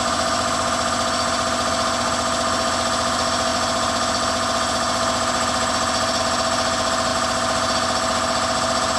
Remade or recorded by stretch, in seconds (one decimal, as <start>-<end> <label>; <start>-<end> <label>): 0.0-9.0 recorded